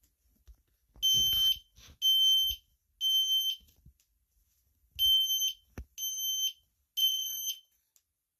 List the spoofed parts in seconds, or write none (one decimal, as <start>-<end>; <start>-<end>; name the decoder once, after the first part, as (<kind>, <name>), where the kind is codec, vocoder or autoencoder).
7.0-7.8 (vocoder, Vocos)